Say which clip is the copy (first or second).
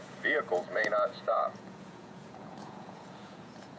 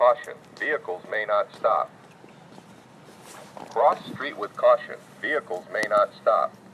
first